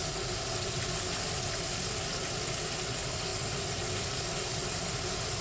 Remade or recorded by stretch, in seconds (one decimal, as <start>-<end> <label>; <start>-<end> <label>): 0.0-5.4 recorded